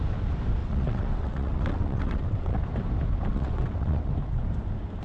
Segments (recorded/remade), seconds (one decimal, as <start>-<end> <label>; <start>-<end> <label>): 0.0-0.6 recorded; 0.6-2.6 remade; 2.6-3.3 recorded; 3.3-4.1 remade; 4.1-5.0 recorded